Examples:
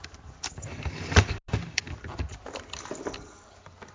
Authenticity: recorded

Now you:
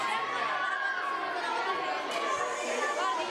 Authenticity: recorded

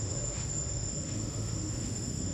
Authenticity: remade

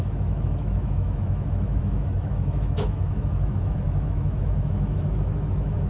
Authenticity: remade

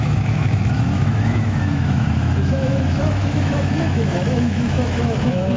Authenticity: remade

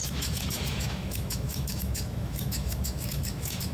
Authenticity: remade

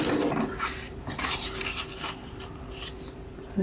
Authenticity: recorded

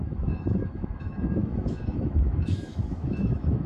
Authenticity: remade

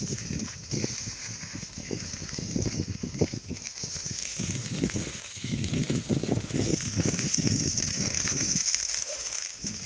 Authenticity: remade